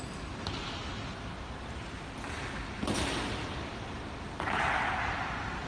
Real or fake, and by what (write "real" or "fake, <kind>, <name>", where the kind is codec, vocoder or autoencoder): real